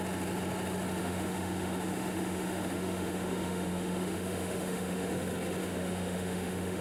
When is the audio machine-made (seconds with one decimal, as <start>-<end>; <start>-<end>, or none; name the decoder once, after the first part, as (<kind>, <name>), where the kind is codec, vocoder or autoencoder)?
1.0-5.1 (autoencoder, DAC-VAE); 5.6-6.8